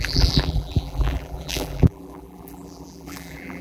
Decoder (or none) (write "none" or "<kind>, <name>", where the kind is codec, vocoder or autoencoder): vocoder, BigVGAN v2